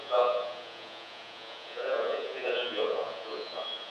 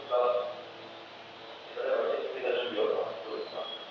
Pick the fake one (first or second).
first